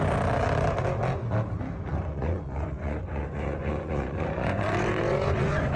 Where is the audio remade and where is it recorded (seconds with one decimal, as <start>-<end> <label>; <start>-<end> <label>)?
0.0-1.9 recorded; 1.9-5.8 remade